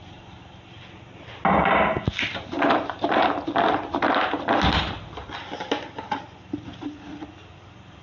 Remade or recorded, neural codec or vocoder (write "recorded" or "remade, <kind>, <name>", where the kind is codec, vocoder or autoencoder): recorded